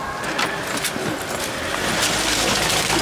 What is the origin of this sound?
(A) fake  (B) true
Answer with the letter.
B